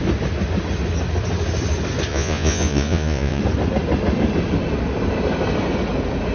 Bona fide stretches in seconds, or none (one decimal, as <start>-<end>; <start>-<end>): 0.0-2.1; 3.4-6.3